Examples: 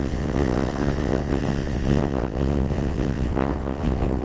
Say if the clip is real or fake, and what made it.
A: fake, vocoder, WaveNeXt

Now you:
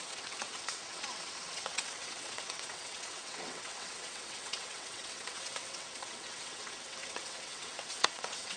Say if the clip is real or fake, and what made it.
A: fake, vocoder, WaveNeXt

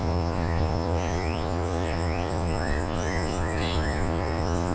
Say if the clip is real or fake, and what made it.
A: fake, vocoder, Vocos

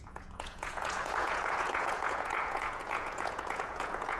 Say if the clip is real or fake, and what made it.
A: fake, vocoder, Vocos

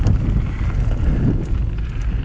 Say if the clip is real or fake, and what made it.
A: real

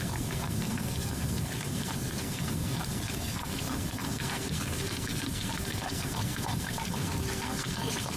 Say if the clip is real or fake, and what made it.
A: fake, codec, SNAC